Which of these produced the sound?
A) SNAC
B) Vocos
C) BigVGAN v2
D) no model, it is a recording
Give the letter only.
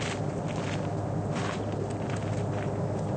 D